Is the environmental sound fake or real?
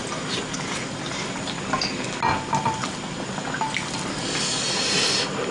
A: real